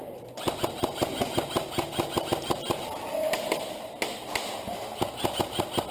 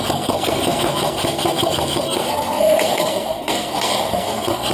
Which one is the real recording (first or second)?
first